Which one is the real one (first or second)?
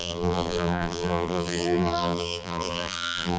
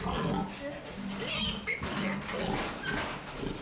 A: second